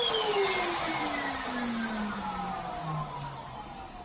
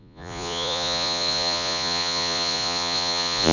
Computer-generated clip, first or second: second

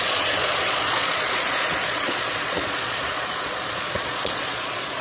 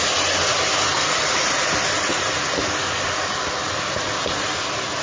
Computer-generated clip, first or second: first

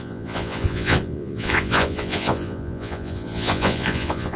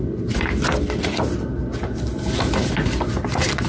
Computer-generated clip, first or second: first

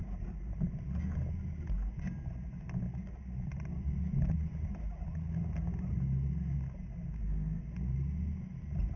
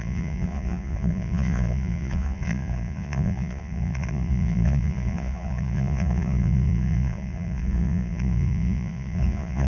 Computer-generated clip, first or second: second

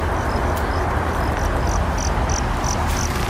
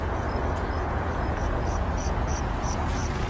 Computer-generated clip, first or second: second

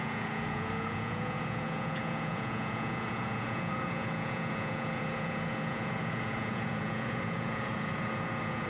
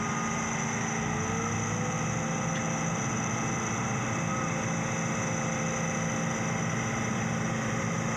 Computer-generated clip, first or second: first